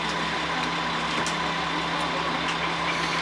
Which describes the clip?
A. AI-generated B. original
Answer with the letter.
B